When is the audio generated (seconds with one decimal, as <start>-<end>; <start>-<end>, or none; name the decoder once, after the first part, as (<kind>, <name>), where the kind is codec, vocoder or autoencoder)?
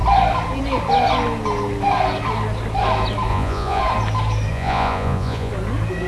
3.3-3.8 (vocoder, Vocos); 4.5-5.5